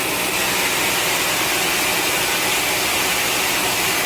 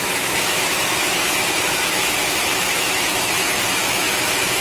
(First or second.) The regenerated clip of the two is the second